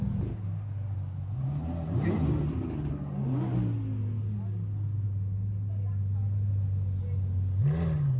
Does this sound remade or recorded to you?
recorded